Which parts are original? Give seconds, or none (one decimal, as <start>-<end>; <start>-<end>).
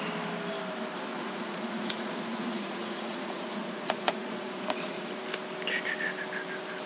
0.0-1.1; 5.2-6.9